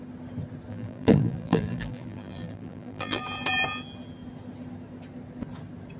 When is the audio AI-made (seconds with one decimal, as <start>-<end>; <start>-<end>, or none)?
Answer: 0.7-3.2